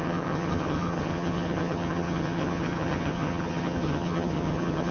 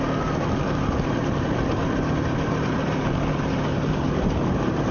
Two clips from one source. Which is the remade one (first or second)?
first